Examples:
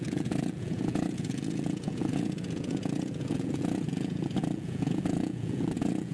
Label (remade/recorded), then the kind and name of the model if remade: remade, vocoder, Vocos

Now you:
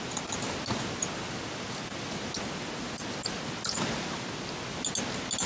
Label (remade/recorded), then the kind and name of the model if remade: recorded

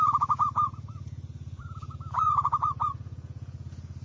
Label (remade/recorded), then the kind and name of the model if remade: remade, vocoder, Vocos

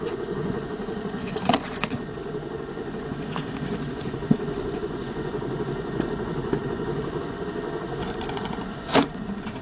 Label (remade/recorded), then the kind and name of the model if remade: remade, vocoder, Vocos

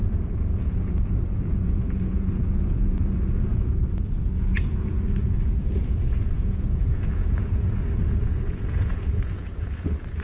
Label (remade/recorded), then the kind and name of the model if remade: remade, vocoder, Vocos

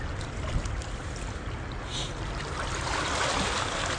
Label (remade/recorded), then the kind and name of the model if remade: recorded